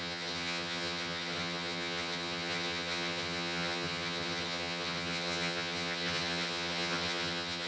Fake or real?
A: fake